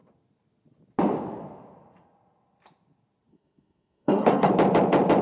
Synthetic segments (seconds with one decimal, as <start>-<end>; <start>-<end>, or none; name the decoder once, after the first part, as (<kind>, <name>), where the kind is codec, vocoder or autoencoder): 3.3-4.5 (codec, SNAC)